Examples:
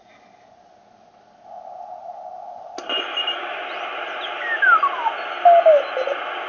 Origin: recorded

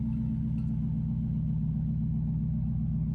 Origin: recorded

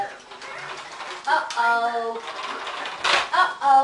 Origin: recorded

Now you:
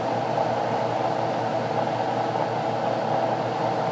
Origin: recorded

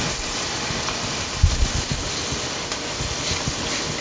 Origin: recorded